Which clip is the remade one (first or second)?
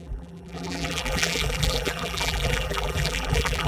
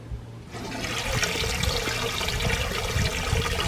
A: first